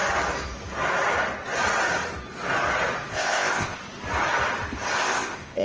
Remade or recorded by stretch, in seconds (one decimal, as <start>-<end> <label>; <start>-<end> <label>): 0.0-3.1 recorded; 3.1-3.8 remade; 3.8-5.0 recorded; 5.0-5.6 remade

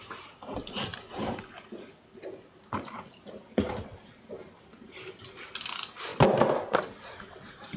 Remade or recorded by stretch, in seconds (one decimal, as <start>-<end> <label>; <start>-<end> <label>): 0.0-7.8 recorded

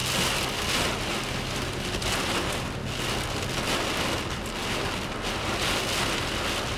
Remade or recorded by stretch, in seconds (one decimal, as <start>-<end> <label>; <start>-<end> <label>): 0.0-6.8 recorded

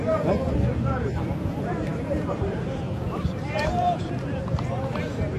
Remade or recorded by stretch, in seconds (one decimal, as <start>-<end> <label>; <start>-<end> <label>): 0.0-1.9 recorded; 1.9-4.5 remade; 4.5-5.4 recorded